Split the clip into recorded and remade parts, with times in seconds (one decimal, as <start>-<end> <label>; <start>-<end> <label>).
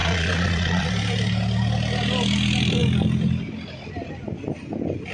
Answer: 0.0-0.9 remade; 0.9-5.1 recorded